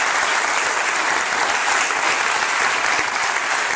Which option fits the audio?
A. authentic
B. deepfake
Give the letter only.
A